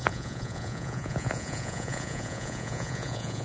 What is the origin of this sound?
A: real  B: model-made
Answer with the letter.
B